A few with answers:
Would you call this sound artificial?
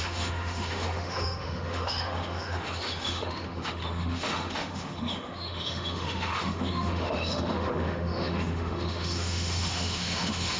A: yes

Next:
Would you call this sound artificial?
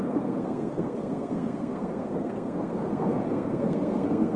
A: yes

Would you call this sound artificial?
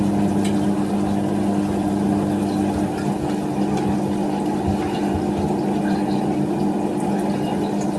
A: no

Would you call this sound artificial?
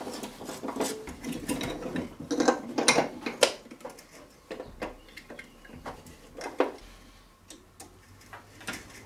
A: no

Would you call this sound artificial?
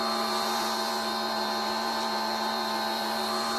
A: yes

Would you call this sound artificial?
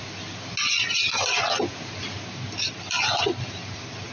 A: no